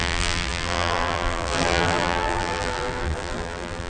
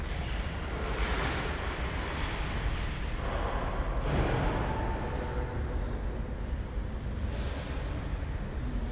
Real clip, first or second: second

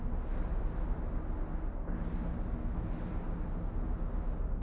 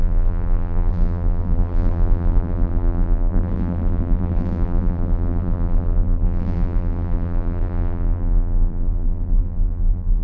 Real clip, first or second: first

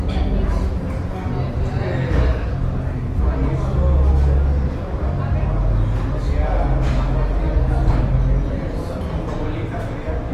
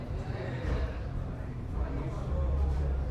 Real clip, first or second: first